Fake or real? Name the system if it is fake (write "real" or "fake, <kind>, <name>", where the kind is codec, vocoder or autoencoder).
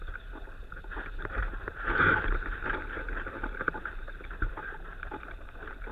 fake, vocoder, BigVGAN v2